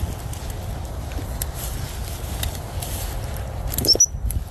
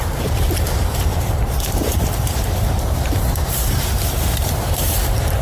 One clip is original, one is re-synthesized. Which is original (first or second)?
first